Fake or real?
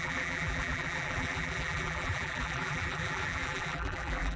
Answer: fake